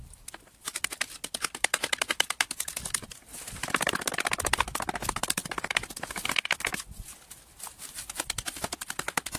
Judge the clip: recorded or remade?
remade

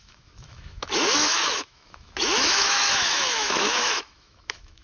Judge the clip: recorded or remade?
remade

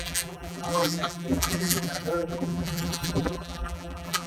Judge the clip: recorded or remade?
remade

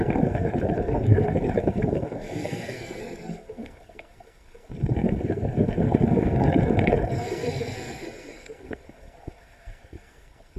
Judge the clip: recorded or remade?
remade